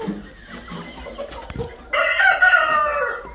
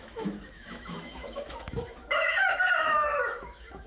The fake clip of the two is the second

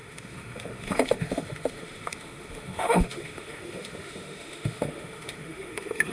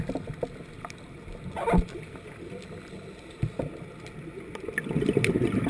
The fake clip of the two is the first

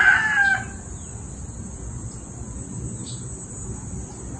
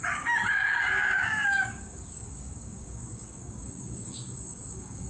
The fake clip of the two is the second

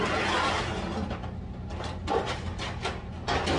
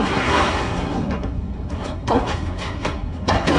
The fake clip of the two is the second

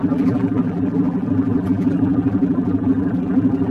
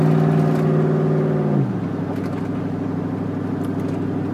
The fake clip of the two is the first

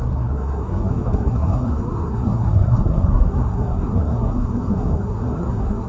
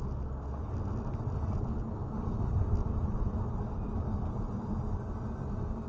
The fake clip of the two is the first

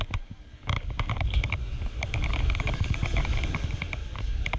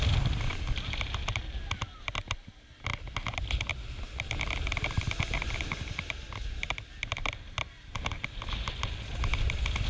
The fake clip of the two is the first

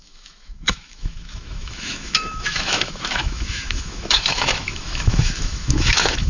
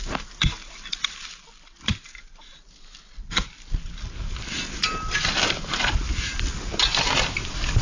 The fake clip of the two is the first